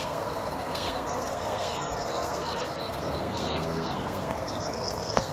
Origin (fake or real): fake